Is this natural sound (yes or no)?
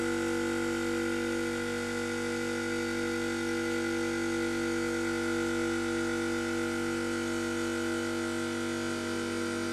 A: yes